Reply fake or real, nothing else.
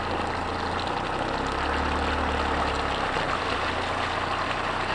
real